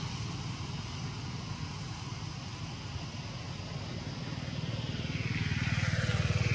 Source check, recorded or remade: recorded